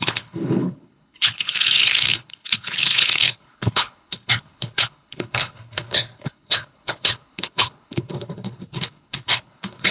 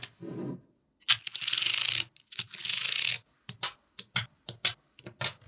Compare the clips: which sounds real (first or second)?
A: second